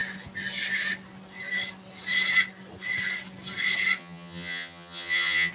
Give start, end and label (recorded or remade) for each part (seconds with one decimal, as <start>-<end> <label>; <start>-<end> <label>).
0.0-4.0 recorded; 4.0-5.5 remade